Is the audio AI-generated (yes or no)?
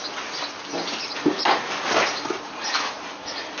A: no